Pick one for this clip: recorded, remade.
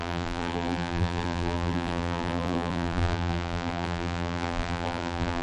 remade